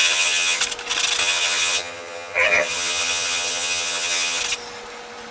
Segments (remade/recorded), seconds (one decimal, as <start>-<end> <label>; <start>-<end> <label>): 0.0-0.6 remade; 0.6-1.2 recorded; 1.2-4.4 remade; 4.4-5.3 recorded